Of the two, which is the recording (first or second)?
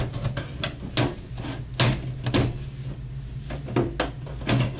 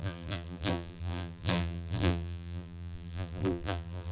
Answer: first